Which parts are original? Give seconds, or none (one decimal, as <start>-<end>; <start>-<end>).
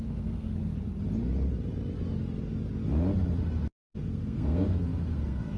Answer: 0.7-4.0